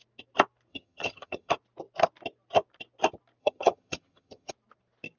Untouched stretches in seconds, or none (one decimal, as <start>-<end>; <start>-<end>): 0.0-0.7; 1.5-3.4; 4.5-5.2